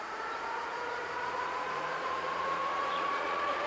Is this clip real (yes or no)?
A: no